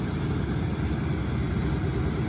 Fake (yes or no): no